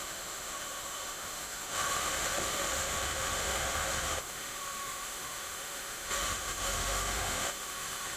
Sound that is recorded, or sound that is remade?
remade